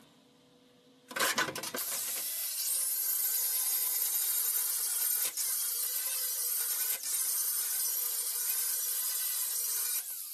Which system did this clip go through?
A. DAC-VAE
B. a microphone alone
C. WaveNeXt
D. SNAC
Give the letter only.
B